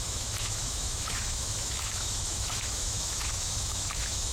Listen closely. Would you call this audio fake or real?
fake